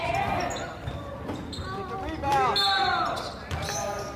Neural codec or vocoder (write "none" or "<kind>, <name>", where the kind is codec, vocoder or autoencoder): none